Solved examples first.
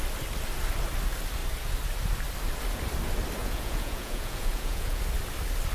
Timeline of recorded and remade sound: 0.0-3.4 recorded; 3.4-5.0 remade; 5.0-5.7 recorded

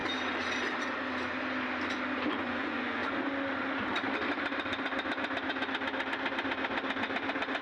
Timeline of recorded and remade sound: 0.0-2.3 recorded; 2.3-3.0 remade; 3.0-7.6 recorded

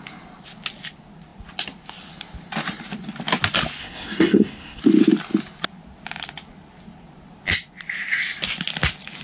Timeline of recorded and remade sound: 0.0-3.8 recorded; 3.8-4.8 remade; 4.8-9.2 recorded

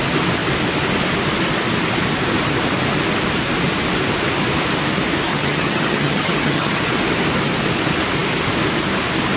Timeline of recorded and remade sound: 0.0-5.3 recorded; 5.3-6.8 remade; 6.8-9.4 recorded

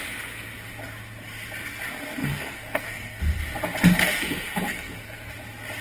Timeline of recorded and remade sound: 0.0-2.2 recorded; 2.2-3.2 remade; 3.2-3.9 recorded; 3.9-5.3 remade; 5.3-5.8 recorded

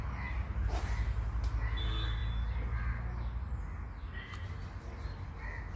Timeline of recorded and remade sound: 0.0-5.8 recorded

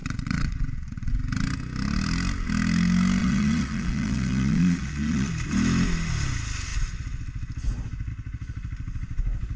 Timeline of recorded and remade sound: 0.0-1.1 remade; 1.1-3.2 recorded; 3.2-5.3 remade; 5.3-9.6 recorded